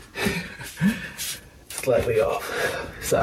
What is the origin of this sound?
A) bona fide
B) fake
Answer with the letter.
A